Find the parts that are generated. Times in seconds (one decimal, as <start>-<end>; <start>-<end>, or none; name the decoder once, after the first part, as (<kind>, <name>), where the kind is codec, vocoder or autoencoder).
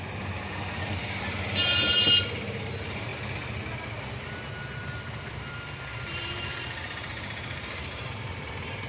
0.0-3.1 (vocoder, BigVGAN v2); 6.1-8.9